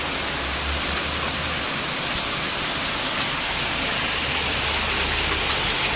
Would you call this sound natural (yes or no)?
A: yes